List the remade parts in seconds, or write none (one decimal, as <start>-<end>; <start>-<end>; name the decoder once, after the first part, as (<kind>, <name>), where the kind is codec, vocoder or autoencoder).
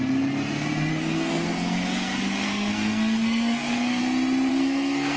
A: 0.9-4.0 (codec, SNAC); 4.5-5.2